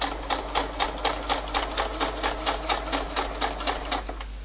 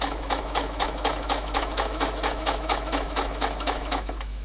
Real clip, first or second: first